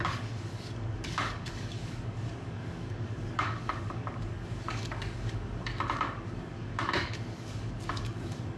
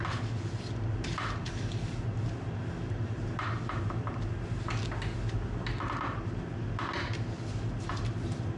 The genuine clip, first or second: second